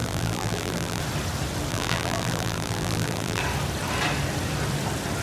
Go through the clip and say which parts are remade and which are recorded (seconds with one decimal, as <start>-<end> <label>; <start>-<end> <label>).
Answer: 0.0-1.0 remade; 1.0-1.7 recorded; 1.7-3.4 remade; 3.4-5.2 recorded